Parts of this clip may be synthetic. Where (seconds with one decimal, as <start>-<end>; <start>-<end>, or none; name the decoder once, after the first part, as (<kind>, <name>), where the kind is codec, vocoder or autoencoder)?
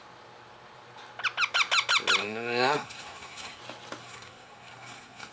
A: 2.2-3.6 (codec, SNAC); 4.0-5.3